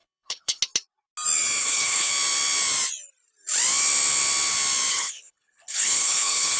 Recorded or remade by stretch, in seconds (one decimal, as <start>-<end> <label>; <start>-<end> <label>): 0.0-0.6 remade; 0.6-1.6 recorded; 1.6-2.1 remade; 2.1-4.9 recorded; 4.9-6.6 remade